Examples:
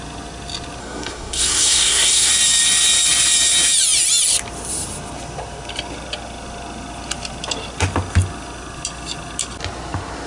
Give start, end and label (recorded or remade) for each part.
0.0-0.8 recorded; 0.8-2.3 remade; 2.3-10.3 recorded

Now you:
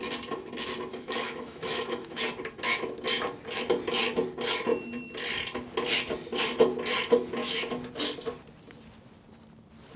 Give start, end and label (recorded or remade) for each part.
0.0-0.9 recorded; 0.9-2.2 remade; 2.2-10.0 recorded

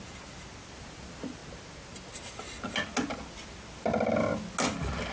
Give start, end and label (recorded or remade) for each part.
0.0-5.1 recorded

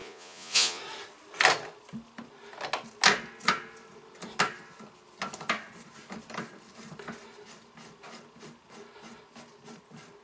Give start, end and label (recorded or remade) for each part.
0.0-0.8 remade; 0.8-10.2 recorded

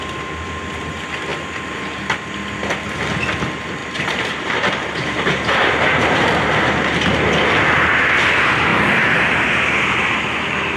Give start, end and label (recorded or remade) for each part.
0.0-3.8 recorded; 3.8-5.7 remade; 5.7-10.8 recorded

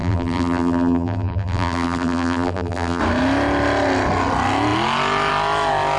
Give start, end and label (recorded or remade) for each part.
0.0-3.0 remade; 3.0-6.0 recorded